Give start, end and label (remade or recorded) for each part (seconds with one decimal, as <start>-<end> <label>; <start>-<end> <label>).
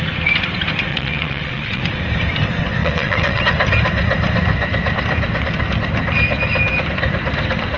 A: 0.0-0.9 recorded; 0.9-1.8 remade; 1.8-2.8 recorded; 2.8-3.4 remade; 3.4-7.8 recorded